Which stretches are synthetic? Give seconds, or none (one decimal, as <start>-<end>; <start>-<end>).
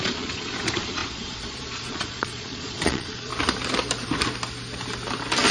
0.0-3.3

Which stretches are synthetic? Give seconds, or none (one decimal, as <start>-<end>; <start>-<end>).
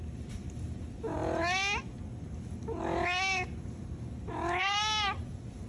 0.0-1.2; 4.6-5.7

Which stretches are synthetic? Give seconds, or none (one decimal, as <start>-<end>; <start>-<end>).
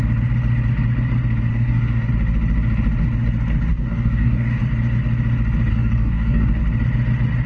1.5-2.1; 3.7-4.6; 5.7-6.6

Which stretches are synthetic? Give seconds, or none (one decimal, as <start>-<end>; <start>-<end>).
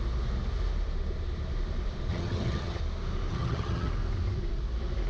2.1-2.8; 3.3-3.9